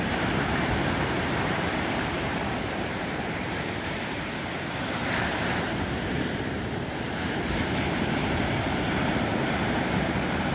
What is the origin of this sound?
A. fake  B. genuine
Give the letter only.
A